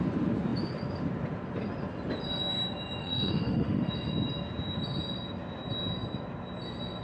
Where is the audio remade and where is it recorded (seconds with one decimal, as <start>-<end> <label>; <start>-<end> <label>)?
0.0-3.0 recorded; 3.0-3.9 remade; 3.9-7.0 recorded